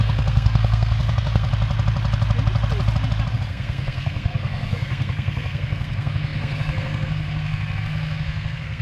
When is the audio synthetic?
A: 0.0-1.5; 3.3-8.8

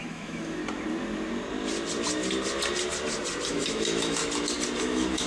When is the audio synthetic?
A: 0.0-0.6; 3.5-4.2; 4.8-5.3

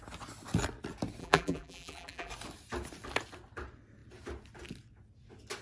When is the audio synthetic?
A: 1.2-2.3

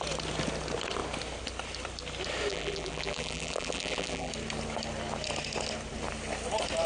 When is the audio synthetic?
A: 2.5-4.3

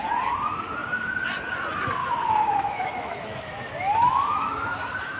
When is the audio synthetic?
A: 2.0-5.2